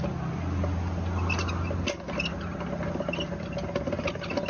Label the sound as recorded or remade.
recorded